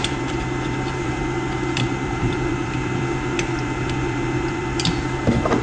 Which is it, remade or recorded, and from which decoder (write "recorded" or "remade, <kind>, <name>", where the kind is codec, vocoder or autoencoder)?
remade, vocoder, BigVGAN v2